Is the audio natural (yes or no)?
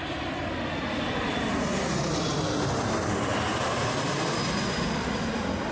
yes